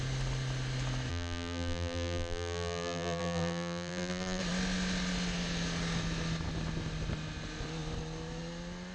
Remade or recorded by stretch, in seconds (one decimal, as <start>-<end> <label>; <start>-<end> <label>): 0.0-1.1 recorded; 1.1-4.4 remade; 4.4-8.9 recorded